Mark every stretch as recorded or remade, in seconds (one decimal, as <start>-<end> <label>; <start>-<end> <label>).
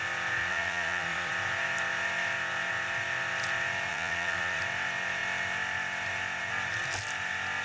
0.0-0.4 recorded; 0.4-1.3 remade; 1.3-3.9 recorded; 3.9-4.6 remade; 4.6-7.6 recorded